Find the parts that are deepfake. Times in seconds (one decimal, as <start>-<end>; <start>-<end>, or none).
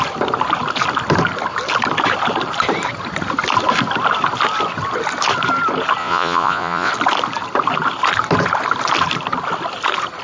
6.0-6.9